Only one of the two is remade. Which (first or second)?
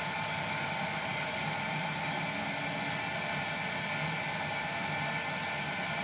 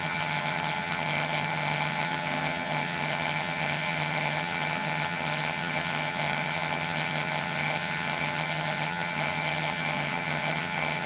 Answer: second